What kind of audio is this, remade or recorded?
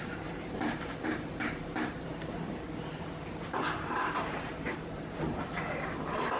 remade